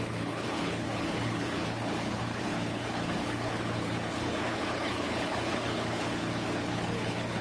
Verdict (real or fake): fake